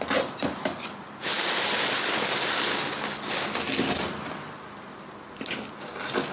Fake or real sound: real